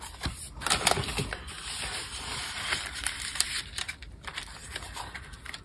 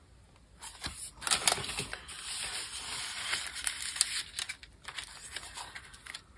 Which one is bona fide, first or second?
second